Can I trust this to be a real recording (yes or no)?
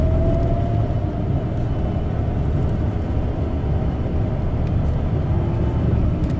yes